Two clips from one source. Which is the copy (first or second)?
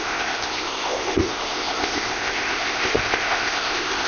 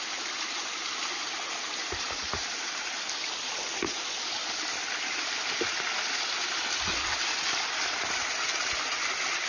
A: first